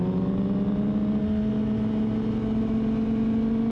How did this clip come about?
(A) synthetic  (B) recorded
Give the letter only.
B